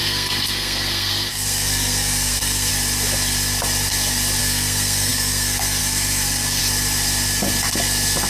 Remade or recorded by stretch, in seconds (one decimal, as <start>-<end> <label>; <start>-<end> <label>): 0.0-2.7 remade; 2.7-4.4 recorded; 4.4-6.6 remade; 6.6-8.3 recorded